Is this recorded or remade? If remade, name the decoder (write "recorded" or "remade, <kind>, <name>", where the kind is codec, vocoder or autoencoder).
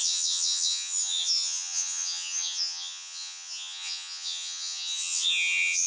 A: remade, vocoder, HiFi-GAN